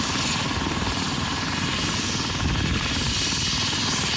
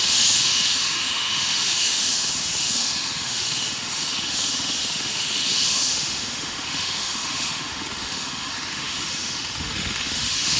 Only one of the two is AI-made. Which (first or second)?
second